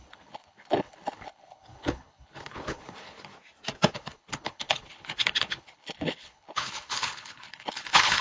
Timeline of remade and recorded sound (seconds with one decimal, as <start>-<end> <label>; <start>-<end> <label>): 0.0-3.3 remade; 3.3-3.9 recorded; 3.9-8.2 remade